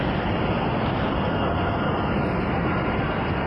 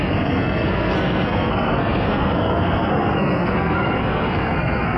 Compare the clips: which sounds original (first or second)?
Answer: first